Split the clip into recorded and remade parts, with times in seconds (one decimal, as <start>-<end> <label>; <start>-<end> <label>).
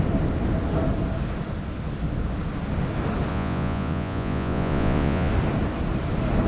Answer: 0.0-3.3 recorded; 3.3-5.3 remade; 5.3-6.5 recorded